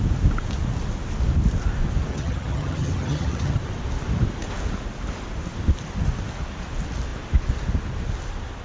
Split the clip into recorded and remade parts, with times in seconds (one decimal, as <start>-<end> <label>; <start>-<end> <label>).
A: 0.0-2.1 recorded; 2.1-3.6 remade; 3.6-8.6 recorded